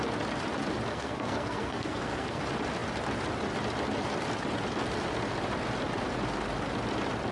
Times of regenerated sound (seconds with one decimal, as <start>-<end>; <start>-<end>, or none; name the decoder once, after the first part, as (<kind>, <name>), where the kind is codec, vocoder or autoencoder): 0.9-2.4 (codec, SNAC)